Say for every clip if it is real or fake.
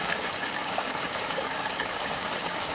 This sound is fake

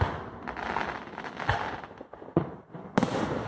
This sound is real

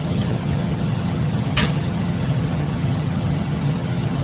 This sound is fake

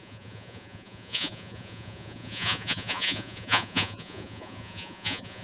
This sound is fake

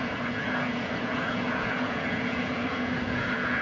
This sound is fake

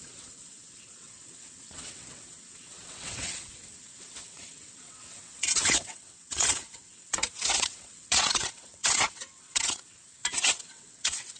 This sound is fake